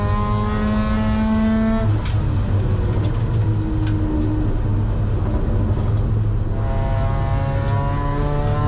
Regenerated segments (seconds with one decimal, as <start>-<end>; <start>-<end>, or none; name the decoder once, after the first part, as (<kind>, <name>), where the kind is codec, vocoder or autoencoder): none